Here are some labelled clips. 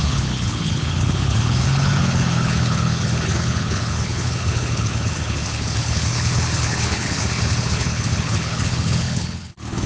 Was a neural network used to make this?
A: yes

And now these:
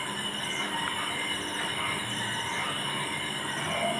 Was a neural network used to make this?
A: no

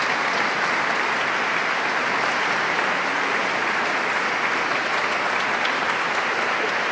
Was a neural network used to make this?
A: no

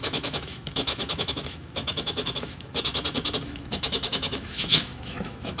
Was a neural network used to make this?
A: yes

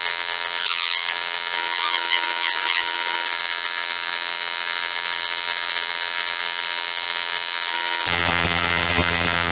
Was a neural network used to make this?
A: yes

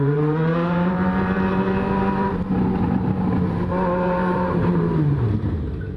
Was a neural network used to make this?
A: yes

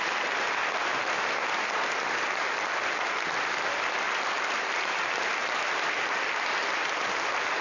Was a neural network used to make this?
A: no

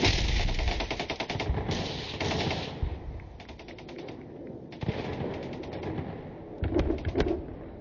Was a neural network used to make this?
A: no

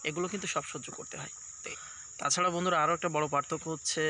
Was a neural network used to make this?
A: no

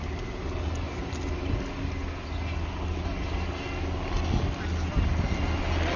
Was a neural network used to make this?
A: no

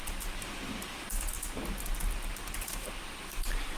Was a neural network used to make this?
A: no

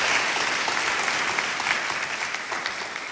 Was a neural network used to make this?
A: no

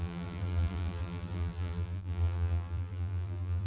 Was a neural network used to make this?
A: yes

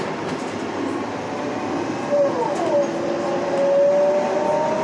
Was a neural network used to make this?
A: no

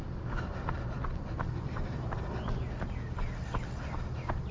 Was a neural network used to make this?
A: no